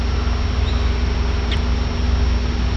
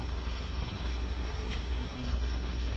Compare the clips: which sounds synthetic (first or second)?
second